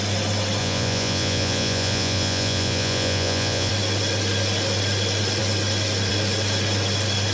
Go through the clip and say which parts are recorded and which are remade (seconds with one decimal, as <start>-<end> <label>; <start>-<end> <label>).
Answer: 0.0-0.6 recorded; 0.6-3.7 remade; 3.7-7.3 recorded